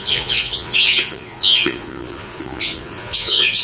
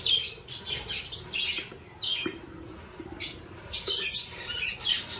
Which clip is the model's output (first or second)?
first